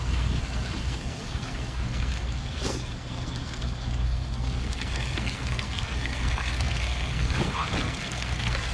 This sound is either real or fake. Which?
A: fake